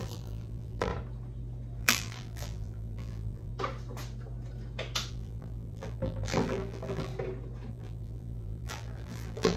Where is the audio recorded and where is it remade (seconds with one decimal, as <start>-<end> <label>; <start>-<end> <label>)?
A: 0.0-0.9 remade; 0.9-1.8 recorded; 1.8-3.5 remade; 3.5-5.1 recorded; 5.1-7.1 remade; 7.1-7.7 recorded; 7.7-9.6 remade